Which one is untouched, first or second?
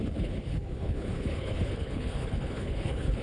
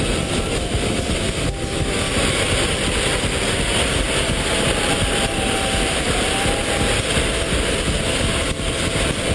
second